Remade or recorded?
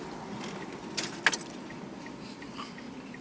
recorded